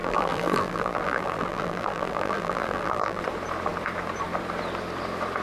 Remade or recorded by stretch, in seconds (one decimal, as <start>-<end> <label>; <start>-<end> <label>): 0.0-3.2 remade; 3.2-5.4 recorded